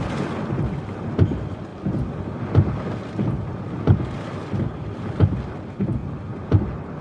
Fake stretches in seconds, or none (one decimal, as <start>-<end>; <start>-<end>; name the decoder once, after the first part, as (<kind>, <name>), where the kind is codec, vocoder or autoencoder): none